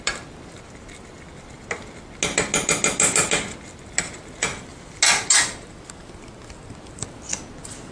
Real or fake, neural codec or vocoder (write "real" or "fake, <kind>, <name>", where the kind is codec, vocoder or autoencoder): real